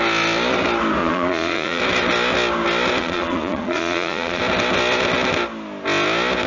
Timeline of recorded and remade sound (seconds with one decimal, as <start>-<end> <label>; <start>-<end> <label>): 0.0-1.0 recorded; 1.0-1.8 remade; 1.8-3.0 recorded; 3.0-4.4 remade; 4.4-6.5 recorded